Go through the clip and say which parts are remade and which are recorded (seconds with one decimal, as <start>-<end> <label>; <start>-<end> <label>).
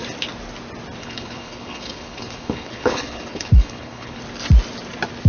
0.0-1.0 recorded; 1.0-4.2 remade; 4.2-5.3 recorded